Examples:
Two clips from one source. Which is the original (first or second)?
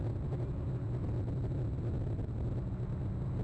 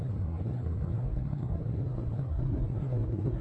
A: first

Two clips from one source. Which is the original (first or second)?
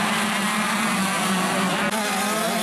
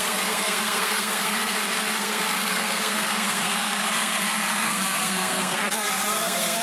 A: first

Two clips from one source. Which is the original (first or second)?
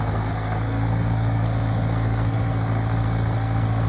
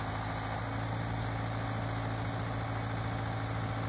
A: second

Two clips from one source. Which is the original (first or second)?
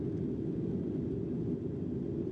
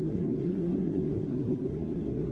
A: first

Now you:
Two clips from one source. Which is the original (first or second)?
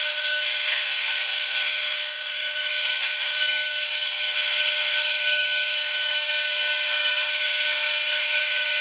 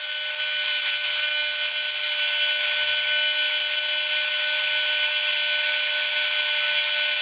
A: second